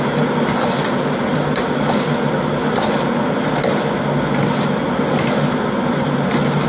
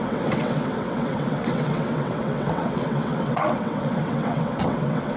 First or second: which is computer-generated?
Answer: second